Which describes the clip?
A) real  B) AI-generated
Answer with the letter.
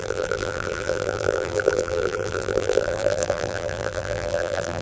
B